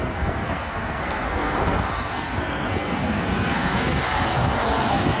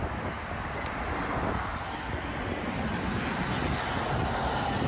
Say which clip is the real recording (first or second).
second